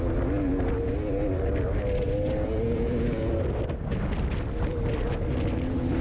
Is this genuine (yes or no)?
yes